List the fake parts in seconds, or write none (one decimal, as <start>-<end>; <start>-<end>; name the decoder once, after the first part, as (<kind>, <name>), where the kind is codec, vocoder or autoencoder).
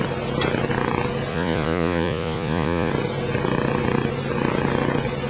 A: 1.3-2.9 (vocoder, Vocos)